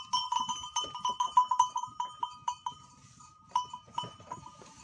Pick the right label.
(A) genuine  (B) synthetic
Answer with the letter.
B